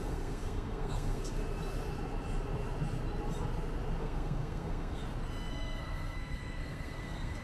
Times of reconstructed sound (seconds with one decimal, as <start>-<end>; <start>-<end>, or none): 0.0-1.4; 4.0-5.0; 5.5-7.4